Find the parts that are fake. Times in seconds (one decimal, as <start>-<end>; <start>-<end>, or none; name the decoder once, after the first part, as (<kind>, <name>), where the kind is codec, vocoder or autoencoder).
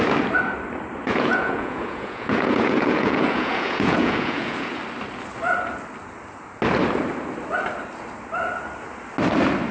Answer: 1.0-4.8 (vocoder, Vocos)